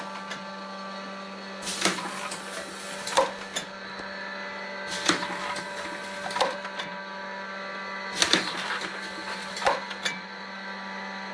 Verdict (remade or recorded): recorded